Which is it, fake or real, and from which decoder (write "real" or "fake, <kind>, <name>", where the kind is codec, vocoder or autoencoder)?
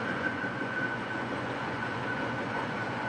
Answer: fake, vocoder, Vocos